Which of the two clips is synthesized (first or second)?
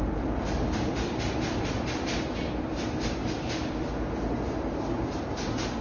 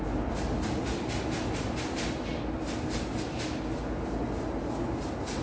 first